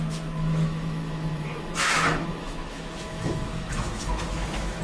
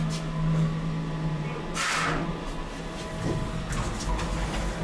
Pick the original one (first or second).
second